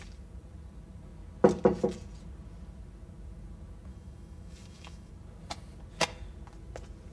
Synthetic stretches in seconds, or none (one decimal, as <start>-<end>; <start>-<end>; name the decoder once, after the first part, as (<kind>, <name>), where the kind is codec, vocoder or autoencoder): 3.9-5.1 (autoencoder, DAC-VAE)